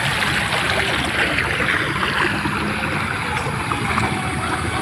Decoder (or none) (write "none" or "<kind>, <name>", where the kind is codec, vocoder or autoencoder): none